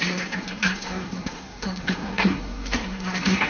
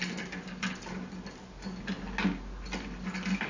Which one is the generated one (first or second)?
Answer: first